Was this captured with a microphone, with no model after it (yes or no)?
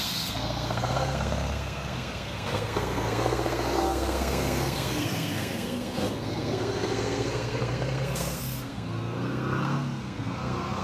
no